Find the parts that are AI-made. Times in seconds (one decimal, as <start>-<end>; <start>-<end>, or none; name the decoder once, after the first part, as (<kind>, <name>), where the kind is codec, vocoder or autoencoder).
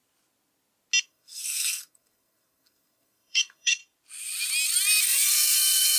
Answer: 1.0-3.8 (codec, SNAC); 5.0-6.0